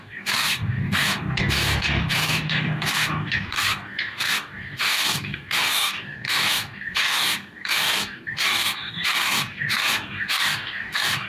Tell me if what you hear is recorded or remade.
remade